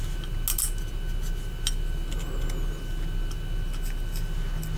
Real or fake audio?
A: real